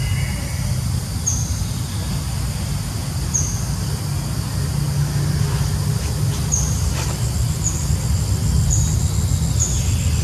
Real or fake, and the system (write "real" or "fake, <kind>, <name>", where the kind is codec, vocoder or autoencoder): real